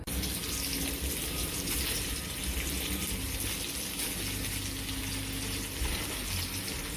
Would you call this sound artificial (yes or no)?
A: no